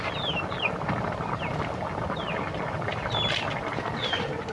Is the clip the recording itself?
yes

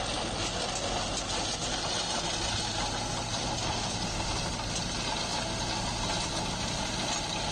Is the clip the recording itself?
yes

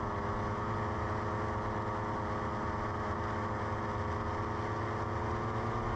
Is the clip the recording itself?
yes